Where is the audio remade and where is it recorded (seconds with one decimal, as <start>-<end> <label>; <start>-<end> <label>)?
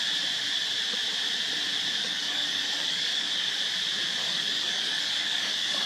0.0-2.0 recorded; 2.0-3.6 remade; 3.6-4.2 recorded; 4.2-5.9 remade